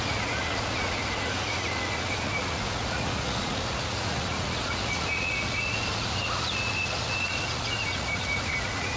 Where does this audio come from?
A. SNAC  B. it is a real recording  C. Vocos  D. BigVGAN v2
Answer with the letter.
C